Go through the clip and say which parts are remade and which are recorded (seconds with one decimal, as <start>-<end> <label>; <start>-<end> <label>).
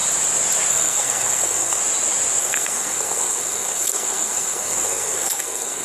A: 0.0-0.7 recorded; 0.7-1.8 remade; 1.8-2.4 recorded; 2.4-5.8 remade